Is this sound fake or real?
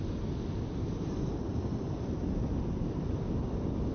real